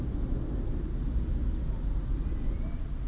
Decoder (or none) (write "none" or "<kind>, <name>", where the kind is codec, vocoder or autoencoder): none